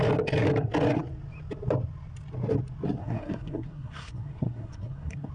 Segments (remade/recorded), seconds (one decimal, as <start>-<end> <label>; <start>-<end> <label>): 0.0-3.0 recorded; 3.0-5.3 remade